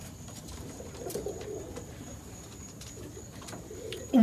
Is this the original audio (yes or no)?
no